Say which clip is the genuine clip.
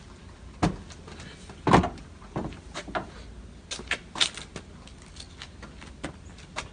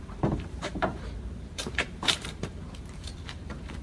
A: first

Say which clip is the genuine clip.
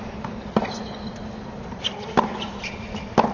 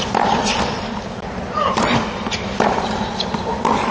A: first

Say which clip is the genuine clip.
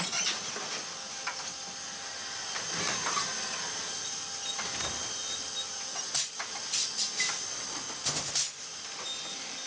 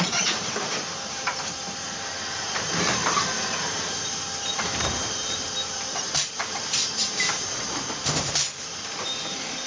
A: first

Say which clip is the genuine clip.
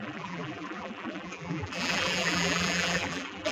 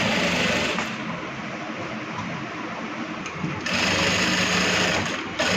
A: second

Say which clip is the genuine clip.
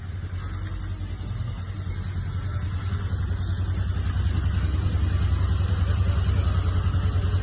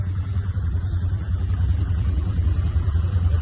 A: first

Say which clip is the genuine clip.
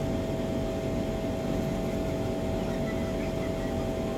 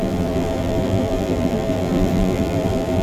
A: first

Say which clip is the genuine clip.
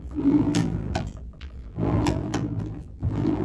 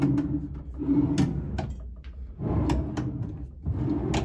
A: second